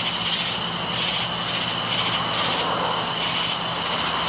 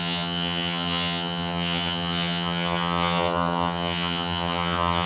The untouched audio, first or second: first